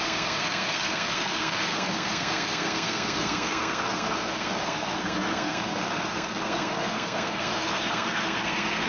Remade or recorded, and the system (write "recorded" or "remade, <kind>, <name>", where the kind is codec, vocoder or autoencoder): remade, codec, SNAC